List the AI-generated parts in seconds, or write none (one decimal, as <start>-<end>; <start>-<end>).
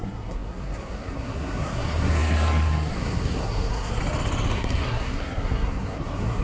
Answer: 0.0-4.0; 4.5-6.4